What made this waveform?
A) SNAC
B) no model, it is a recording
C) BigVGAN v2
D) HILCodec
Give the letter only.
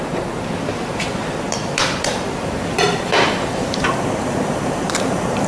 C